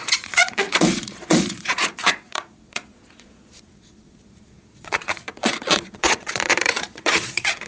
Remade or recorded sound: remade